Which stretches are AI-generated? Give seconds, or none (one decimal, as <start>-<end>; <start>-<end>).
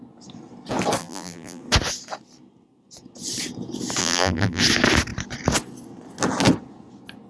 1.0-1.6; 4.0-4.6